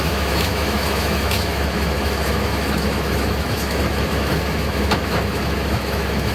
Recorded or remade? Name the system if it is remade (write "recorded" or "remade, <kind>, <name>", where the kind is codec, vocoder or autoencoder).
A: remade, autoencoder, DAC-VAE